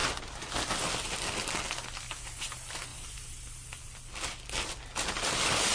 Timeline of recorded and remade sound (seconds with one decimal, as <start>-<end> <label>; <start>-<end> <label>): 0.0-5.7 recorded